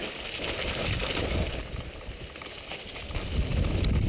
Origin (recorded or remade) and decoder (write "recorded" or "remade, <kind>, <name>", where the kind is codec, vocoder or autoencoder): recorded